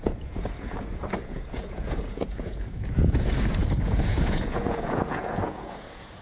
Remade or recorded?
remade